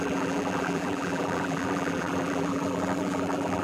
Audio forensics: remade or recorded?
remade